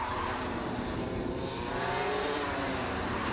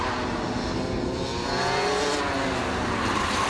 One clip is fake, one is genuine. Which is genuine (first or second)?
second